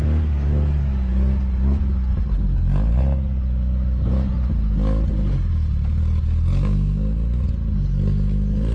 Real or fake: real